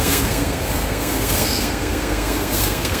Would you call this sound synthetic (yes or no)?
yes